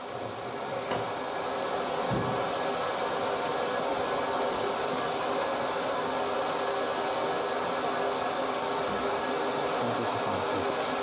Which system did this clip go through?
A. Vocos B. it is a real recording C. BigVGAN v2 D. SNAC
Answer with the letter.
B